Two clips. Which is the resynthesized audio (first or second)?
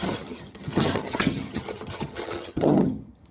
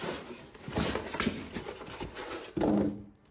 first